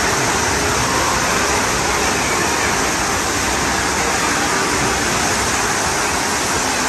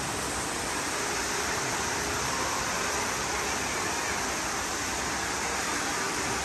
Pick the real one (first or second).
first